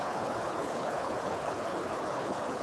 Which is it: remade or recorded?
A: remade